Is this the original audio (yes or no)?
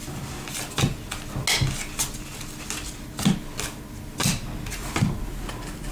yes